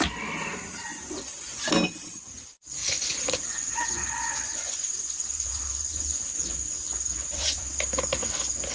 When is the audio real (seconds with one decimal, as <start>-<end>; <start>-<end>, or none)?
0.0-0.9; 1.6-2.8; 7.7-8.7

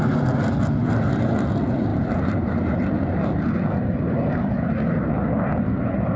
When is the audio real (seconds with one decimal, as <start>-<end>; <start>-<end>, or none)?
0.0-6.2

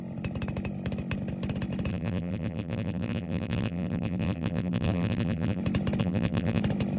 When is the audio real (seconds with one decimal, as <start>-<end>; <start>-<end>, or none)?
0.0-1.9; 5.6-6.0; 6.6-7.0

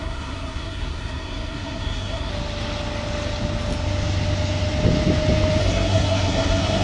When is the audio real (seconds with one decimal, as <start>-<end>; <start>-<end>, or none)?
2.3-5.6